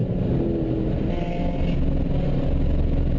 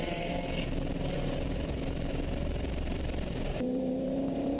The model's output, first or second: second